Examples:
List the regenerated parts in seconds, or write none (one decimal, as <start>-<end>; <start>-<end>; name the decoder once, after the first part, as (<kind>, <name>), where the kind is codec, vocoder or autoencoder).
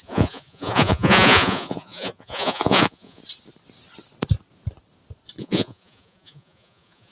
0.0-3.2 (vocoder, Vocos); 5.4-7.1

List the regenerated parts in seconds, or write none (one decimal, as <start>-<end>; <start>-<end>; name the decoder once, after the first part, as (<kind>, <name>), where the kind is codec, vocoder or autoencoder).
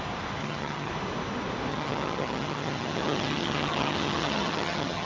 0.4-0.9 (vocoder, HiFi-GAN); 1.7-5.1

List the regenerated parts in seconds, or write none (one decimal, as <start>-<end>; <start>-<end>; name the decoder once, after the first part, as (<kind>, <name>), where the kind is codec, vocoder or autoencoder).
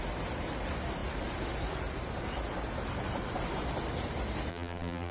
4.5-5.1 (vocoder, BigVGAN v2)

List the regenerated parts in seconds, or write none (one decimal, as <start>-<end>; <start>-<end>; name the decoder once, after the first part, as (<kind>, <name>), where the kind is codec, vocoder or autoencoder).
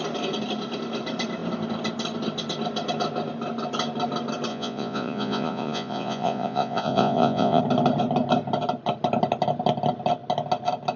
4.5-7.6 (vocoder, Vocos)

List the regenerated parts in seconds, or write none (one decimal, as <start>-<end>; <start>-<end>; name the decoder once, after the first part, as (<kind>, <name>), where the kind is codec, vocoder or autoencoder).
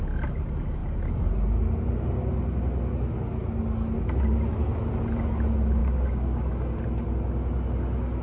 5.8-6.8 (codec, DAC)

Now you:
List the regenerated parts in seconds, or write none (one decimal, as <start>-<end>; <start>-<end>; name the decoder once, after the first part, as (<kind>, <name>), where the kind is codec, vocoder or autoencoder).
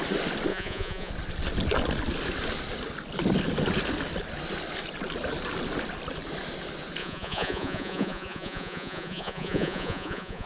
0.5-1.1 (vocoder, Vocos); 7.0-10.5